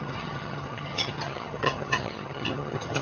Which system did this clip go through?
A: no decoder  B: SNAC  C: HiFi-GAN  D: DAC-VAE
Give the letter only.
C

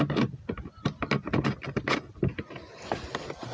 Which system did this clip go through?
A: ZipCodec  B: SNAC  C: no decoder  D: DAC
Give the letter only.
C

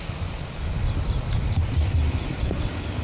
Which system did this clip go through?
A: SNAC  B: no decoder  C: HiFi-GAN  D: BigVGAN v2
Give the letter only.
B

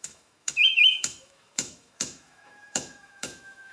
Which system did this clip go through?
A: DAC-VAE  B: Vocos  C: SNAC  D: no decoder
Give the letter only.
A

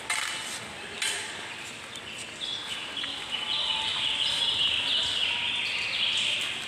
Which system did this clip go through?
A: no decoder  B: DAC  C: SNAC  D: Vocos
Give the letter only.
A